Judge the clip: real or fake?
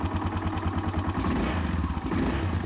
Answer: real